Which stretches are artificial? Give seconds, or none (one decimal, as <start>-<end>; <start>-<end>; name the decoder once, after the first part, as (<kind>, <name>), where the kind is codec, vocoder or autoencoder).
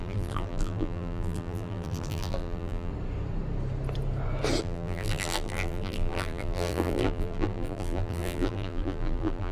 0.0-2.9 (vocoder, BigVGAN v2); 4.6-9.5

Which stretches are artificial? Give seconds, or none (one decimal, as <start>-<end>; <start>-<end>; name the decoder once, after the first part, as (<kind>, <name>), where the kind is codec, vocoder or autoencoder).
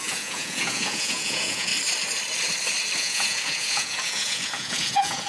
0.0-1.7 (vocoder, Vocos); 3.0-5.3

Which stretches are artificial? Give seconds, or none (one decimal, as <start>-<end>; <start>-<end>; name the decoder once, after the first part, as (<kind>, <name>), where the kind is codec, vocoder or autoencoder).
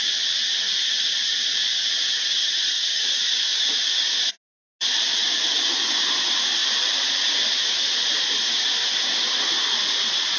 2.4-3.0 (vocoder, HiFi-GAN)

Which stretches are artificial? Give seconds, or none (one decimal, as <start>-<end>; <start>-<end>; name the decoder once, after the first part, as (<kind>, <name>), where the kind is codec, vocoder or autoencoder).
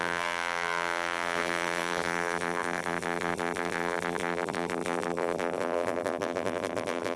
0.0-7.2 (vocoder, BigVGAN v2)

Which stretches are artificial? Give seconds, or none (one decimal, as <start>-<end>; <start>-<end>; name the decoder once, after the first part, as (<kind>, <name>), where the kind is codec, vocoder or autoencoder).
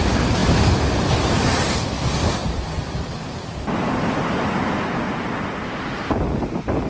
none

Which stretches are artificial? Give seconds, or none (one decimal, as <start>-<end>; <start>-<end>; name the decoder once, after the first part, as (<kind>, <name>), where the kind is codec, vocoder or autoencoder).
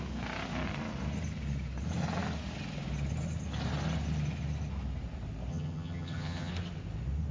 5.5-6.5 (vocoder, HiFi-GAN)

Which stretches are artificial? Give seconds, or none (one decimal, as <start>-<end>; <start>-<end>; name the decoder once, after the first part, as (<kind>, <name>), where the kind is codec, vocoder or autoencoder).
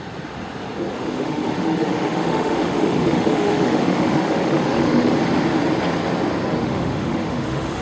0.9-5.1 (autoencoder, DAC-VAE); 6.6-7.8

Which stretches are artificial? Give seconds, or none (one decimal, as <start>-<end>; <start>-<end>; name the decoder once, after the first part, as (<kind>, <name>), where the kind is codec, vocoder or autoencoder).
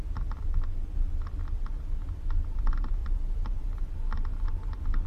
3.0-3.8 (vocoder, BigVGAN v2)